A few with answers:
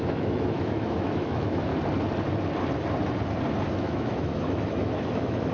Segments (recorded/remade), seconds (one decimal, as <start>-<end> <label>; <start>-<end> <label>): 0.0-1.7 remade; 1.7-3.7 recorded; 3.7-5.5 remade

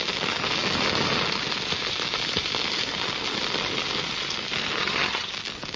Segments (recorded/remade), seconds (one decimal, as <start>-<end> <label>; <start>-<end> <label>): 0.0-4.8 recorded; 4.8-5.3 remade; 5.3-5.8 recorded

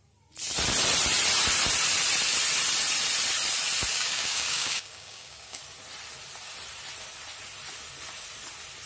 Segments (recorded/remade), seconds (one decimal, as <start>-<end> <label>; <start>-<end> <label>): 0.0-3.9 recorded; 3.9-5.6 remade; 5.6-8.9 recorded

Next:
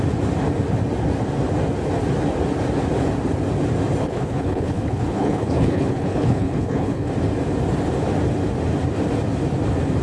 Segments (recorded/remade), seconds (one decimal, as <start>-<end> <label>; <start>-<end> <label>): 0.0-4.0 recorded; 4.0-7.1 remade; 7.1-10.0 recorded

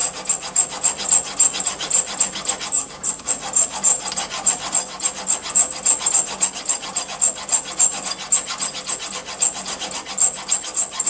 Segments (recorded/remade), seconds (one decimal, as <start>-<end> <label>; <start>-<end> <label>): 0.0-11.1 recorded